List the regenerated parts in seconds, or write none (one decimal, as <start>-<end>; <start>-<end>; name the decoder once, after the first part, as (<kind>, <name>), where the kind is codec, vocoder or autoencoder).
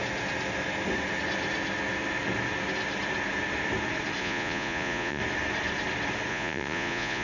4.2-5.2 (vocoder, Vocos); 6.3-7.2